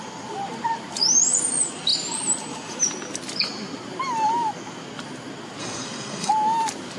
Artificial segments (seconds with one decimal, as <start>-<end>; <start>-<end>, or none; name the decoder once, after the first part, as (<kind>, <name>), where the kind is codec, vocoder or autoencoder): 5.6-6.3 (codec, SNAC)